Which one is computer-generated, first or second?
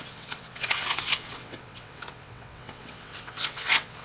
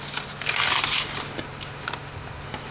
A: first